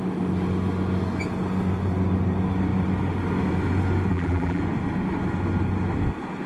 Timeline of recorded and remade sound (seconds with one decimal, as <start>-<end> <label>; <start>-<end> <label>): 0.0-4.1 recorded; 4.1-4.6 remade; 4.6-6.5 recorded